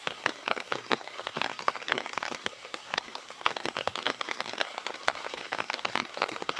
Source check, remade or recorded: remade